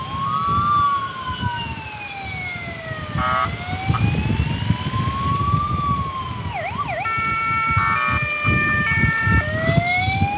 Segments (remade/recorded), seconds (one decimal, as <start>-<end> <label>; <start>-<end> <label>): 0.0-10.4 recorded